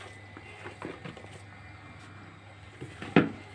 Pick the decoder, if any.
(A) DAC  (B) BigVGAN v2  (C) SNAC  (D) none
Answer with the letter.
D